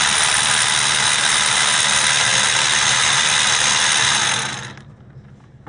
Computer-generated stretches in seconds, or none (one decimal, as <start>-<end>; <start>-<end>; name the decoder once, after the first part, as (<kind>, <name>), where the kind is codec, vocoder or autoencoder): none